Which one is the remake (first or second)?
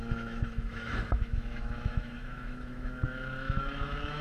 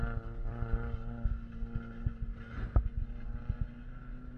first